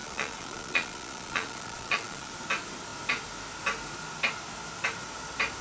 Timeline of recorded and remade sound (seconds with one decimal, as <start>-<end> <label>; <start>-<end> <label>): 0.0-2.3 remade; 2.3-5.6 recorded